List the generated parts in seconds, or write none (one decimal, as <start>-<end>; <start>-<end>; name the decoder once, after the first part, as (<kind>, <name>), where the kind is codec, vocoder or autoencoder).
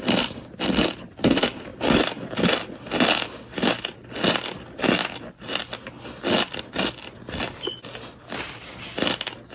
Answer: none